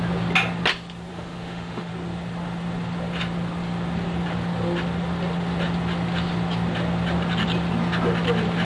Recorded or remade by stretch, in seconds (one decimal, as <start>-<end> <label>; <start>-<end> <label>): 0.0-1.1 recorded; 1.1-1.9 remade; 1.9-8.6 recorded